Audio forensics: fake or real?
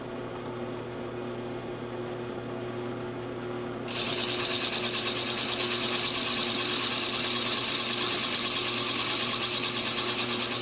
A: real